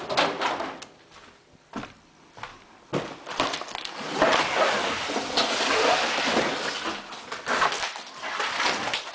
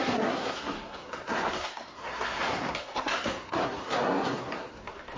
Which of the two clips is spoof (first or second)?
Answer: second